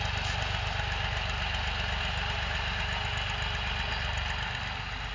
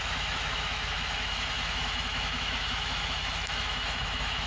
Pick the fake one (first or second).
second